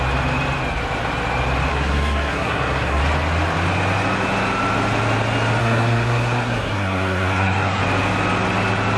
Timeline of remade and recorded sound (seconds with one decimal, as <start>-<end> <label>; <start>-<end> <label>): 0.0-1.7 recorded; 1.7-3.0 remade; 3.0-5.6 recorded; 5.6-7.8 remade; 7.8-9.0 recorded